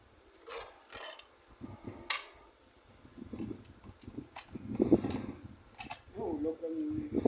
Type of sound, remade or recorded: recorded